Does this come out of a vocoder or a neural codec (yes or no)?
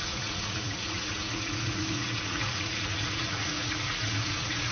yes